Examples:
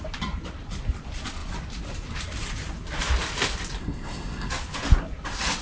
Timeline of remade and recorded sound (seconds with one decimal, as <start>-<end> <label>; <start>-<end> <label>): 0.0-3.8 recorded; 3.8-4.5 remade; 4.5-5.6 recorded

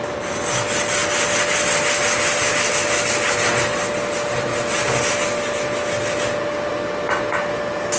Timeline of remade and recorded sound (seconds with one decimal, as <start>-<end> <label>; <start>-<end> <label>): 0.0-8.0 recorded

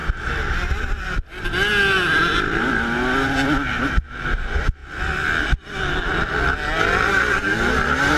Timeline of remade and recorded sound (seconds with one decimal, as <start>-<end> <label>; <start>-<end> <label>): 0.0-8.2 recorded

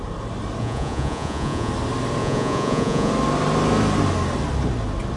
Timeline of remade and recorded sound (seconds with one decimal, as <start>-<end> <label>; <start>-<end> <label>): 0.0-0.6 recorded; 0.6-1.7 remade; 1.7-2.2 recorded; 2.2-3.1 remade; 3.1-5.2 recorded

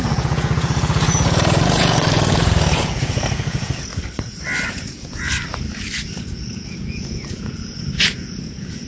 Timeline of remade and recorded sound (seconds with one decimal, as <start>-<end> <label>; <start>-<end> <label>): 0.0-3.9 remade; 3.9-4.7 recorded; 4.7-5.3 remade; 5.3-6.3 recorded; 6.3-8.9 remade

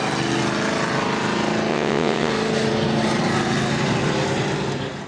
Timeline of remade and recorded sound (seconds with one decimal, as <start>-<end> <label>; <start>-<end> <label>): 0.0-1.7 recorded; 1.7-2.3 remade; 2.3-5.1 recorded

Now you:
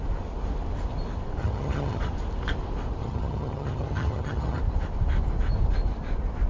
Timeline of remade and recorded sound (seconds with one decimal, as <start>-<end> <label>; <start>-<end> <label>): 0.0-1.4 recorded; 1.4-2.0 remade; 2.0-3.0 recorded; 3.0-4.6 remade; 4.6-6.5 recorded

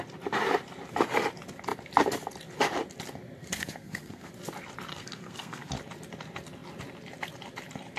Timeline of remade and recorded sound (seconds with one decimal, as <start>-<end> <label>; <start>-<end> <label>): 0.0-3.4 recorded; 3.4-4.3 remade; 4.3-4.9 recorded; 4.9-5.7 remade; 5.7-8.0 recorded